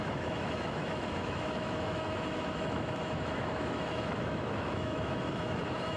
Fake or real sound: fake